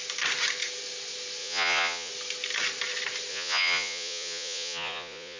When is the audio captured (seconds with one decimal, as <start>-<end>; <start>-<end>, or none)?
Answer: 0.0-1.4; 2.1-3.3

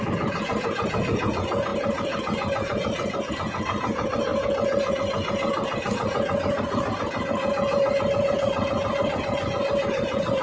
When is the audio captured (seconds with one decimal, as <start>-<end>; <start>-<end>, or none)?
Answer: none